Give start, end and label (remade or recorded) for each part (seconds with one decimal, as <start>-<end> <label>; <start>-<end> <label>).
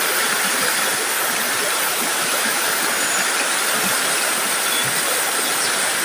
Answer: 0.0-1.9 recorded; 1.9-2.8 remade; 2.8-6.0 recorded